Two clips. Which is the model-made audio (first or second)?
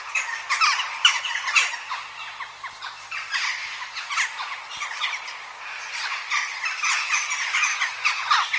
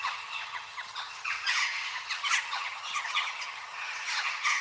second